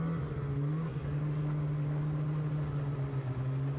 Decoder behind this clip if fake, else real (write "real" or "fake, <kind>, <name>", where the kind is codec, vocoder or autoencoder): real